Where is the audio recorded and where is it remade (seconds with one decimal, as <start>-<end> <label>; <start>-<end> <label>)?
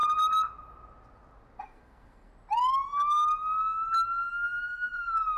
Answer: 0.0-1.6 recorded; 1.6-2.3 remade; 2.3-4.3 recorded; 4.3-5.4 remade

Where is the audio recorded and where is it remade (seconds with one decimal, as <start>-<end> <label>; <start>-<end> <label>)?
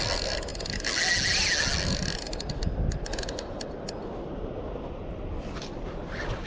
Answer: 0.0-6.5 recorded